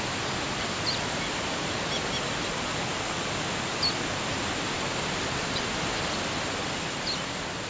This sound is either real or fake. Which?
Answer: real